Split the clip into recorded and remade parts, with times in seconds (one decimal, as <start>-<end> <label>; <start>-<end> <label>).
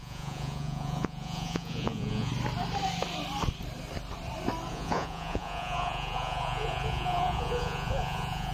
0.0-2.3 remade; 2.3-4.7 recorded; 4.7-8.5 remade